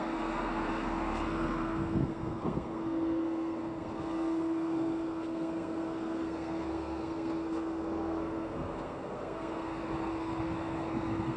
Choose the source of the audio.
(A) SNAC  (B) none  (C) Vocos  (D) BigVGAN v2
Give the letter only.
A